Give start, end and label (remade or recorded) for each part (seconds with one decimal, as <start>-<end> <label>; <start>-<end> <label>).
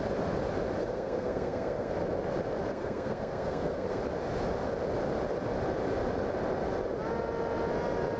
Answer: 0.0-0.8 recorded; 0.8-1.9 remade; 1.9-2.7 recorded; 2.7-4.0 remade; 4.0-8.2 recorded